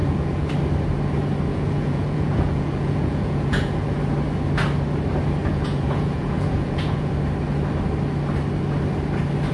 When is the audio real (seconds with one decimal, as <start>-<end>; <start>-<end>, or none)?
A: 0.5-1.5; 4.0-5.4; 7.1-9.5